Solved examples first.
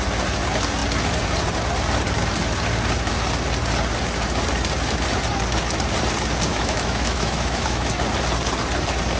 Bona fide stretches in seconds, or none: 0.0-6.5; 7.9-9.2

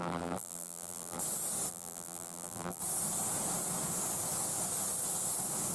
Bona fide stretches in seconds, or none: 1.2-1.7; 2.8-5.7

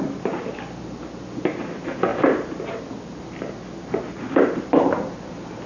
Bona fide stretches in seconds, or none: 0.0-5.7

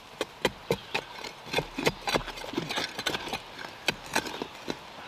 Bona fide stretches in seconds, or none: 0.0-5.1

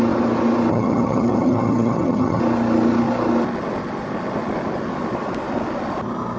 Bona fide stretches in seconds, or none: 0.0-0.7; 2.4-6.4